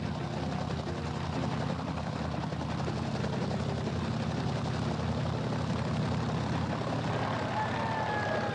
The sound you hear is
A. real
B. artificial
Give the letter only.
A